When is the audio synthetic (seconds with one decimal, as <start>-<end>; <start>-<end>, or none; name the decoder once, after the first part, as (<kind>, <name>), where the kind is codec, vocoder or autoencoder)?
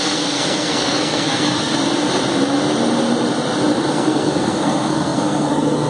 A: 0.0-1.8 (codec, SNAC); 3.9-5.9